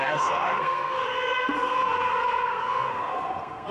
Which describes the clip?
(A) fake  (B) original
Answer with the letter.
A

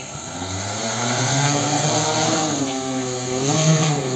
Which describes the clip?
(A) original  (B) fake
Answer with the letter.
B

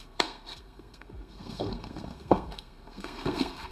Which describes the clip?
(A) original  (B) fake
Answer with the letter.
B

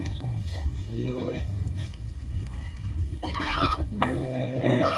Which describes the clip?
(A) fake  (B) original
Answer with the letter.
A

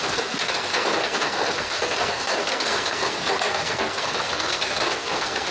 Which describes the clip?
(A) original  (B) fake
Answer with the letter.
B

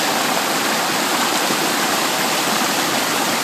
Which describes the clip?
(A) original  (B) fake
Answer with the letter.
A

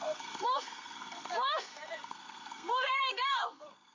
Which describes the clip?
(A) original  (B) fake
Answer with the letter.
B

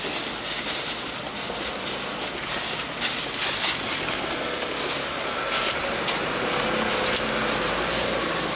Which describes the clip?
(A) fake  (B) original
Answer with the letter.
B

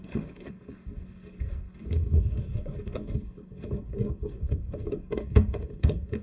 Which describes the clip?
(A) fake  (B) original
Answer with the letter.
A